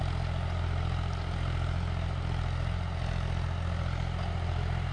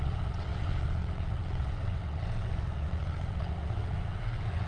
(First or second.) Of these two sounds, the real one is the first